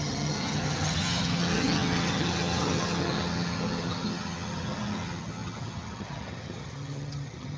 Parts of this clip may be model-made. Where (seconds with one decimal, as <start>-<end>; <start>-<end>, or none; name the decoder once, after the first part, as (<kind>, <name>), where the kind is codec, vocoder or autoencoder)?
0.0-7.6 (vocoder, HiFi-GAN)